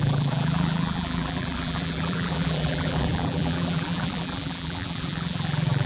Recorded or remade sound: remade